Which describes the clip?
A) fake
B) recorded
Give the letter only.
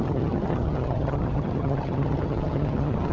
A